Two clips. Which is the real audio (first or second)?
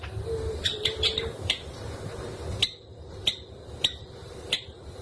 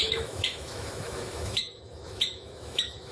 first